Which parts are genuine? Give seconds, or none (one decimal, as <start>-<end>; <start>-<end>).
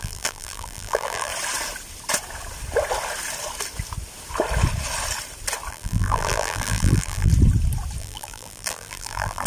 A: 1.3-5.7; 7.3-8.0